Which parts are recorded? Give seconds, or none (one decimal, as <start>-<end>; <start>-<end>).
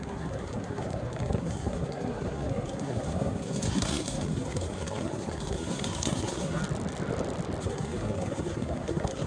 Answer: 6.6-7.6